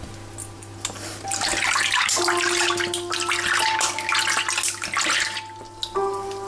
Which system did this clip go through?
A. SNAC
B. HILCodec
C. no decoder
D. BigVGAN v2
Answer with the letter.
C